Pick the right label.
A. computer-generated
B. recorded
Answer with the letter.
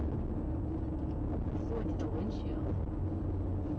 B